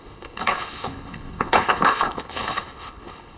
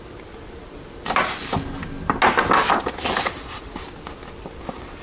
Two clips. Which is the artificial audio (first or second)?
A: first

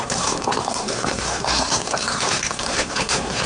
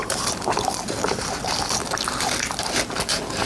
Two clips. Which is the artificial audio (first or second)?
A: first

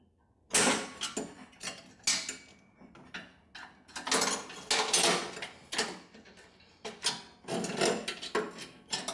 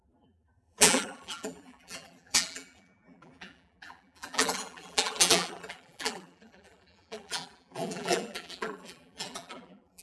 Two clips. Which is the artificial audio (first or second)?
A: second